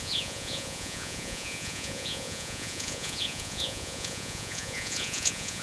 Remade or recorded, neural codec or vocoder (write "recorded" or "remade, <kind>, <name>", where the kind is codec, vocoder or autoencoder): remade, vocoder, Vocos